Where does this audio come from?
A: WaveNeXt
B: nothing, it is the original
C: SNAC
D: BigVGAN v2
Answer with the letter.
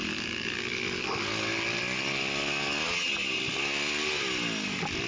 B